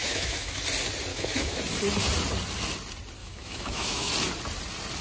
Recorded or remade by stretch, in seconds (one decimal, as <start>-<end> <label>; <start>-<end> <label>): 0.0-0.6 remade; 0.6-1.1 recorded; 1.1-1.6 remade; 1.6-3.2 recorded; 3.2-4.1 remade; 4.1-5.0 recorded